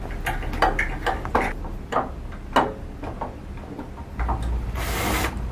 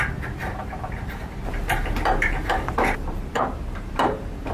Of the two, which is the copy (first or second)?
second